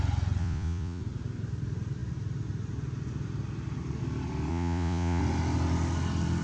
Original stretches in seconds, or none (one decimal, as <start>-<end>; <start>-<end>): 0.0-0.4; 1.0-4.5; 5.2-6.4